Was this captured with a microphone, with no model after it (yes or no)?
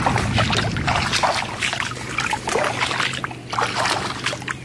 yes